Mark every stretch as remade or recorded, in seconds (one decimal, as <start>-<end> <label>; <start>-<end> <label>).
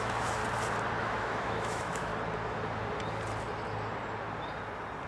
0.0-0.4 remade; 0.4-1.0 recorded; 1.0-2.1 remade; 2.1-5.1 recorded